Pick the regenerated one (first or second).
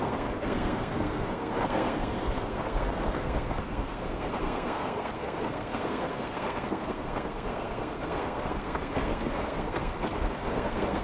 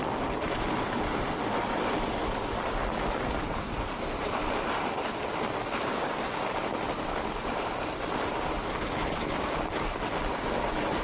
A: first